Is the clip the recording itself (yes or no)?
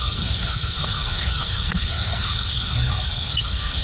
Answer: no